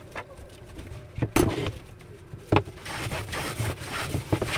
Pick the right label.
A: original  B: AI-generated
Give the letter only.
B